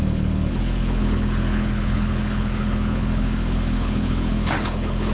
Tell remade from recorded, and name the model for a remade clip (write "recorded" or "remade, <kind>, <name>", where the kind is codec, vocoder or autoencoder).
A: remade, codec, HILCodec